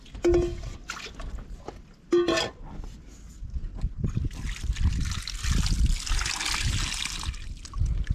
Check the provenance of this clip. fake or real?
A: real